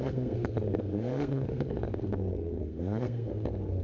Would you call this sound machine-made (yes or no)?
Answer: yes